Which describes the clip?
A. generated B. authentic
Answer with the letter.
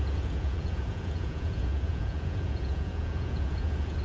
A